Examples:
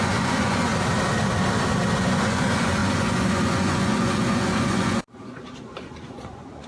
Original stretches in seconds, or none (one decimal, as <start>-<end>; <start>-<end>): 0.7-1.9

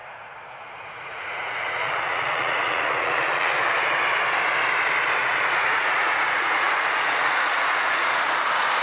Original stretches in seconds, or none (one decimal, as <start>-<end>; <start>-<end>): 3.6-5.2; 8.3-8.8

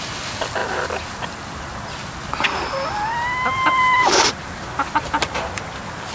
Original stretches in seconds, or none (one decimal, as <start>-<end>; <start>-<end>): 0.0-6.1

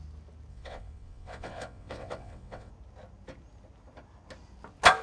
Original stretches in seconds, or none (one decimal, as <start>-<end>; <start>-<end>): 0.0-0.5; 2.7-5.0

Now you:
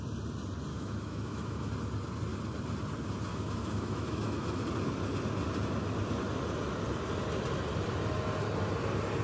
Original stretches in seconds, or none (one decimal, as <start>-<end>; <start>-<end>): 0.0-0.7; 1.7-3.3; 4.6-9.2

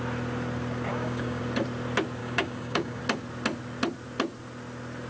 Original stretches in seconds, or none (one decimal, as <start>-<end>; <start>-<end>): 0.0-0.9; 1.4-2.2; 3.0-5.1